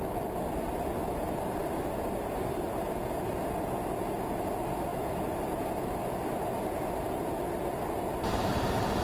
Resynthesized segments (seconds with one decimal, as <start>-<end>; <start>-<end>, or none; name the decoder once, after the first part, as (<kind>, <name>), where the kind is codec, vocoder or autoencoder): none